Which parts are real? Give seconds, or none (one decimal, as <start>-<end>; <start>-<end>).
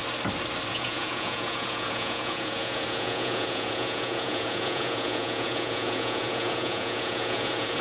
0.0-0.7